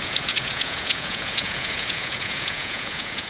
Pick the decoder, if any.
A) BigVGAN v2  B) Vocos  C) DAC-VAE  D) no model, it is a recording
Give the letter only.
B